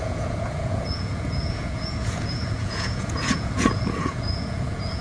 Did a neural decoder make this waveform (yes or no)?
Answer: yes